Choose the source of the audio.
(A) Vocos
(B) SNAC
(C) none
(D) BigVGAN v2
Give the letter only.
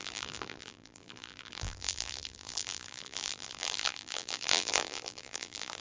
D